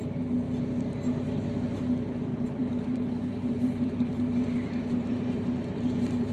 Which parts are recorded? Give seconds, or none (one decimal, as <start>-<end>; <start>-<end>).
0.0-2.3